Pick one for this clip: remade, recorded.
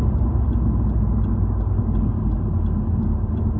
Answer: recorded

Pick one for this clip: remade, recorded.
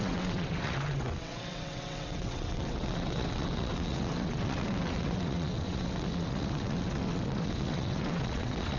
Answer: remade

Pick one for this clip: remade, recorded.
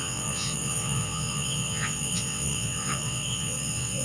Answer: remade